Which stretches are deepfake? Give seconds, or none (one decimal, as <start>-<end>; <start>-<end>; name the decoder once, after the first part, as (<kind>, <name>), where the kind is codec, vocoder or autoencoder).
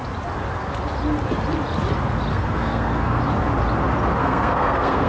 2.3-3.2 (codec, SNAC); 4.2-5.1